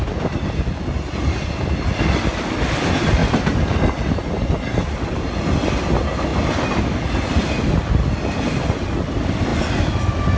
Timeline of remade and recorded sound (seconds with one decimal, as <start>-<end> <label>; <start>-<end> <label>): 0.0-10.4 recorded